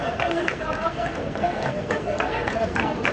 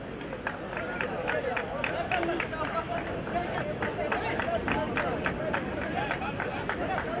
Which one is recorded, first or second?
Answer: second